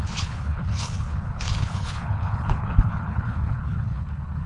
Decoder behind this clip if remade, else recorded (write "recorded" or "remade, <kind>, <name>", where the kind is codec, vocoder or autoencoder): remade, codec, HILCodec